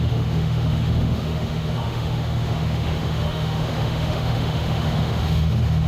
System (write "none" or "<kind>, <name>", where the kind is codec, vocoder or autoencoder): autoencoder, DAC-VAE